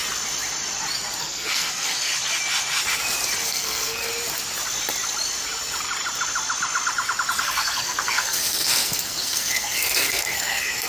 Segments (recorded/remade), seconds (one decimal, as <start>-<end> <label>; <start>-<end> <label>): 0.0-1.2 recorded; 1.2-2.1 remade; 2.1-3.5 recorded; 3.5-4.1 remade; 4.1-7.4 recorded; 7.4-10.9 remade